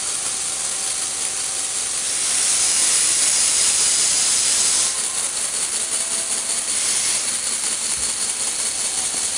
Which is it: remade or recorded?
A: recorded